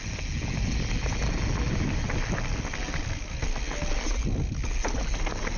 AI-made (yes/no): no